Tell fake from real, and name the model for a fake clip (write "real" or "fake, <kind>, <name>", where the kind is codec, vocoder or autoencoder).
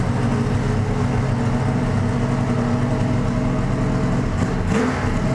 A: real